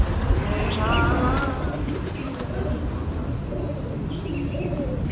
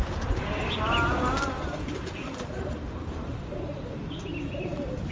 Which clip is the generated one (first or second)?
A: second